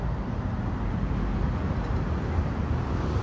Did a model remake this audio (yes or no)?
no